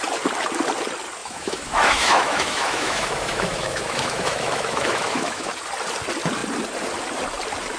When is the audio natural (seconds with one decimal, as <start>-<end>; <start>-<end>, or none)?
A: 0.0-1.2; 5.5-7.8